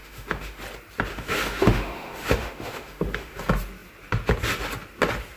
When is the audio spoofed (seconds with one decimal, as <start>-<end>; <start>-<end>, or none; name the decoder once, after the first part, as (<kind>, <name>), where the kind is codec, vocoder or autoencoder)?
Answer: 0.0-0.6 (autoencoder, DAC-VAE); 1.1-3.4